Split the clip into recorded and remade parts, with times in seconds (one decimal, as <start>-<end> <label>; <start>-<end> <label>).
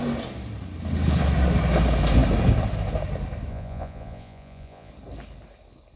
0.0-3.5 recorded; 3.5-4.9 remade; 4.9-6.0 recorded